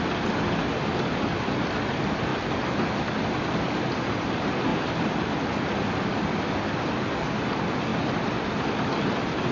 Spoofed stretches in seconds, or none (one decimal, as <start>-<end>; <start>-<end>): 4.7-5.4